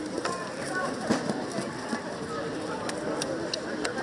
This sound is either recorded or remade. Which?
recorded